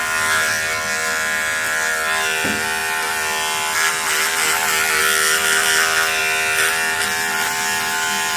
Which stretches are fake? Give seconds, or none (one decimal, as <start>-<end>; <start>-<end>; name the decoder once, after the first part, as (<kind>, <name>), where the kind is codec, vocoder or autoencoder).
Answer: none